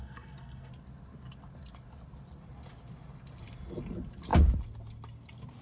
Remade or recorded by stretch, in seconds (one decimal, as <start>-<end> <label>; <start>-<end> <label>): 0.0-0.7 remade; 0.7-5.6 recorded